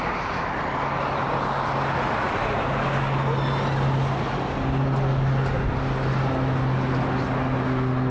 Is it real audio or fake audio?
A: real